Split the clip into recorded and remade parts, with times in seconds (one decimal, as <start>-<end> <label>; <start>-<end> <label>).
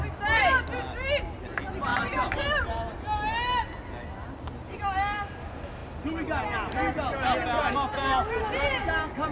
0.0-9.3 recorded